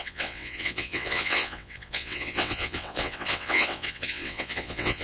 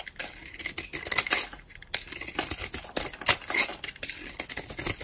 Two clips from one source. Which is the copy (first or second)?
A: first